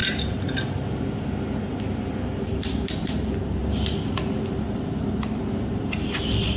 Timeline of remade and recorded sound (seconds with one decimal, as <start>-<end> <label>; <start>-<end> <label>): 0.0-3.6 recorded; 3.6-4.1 remade; 4.1-6.6 recorded